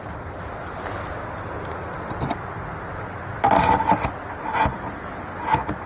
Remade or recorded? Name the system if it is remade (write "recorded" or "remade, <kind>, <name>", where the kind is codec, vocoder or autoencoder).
recorded